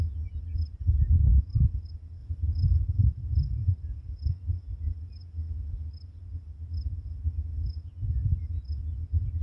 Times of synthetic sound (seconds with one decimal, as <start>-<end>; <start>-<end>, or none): 2.2-2.8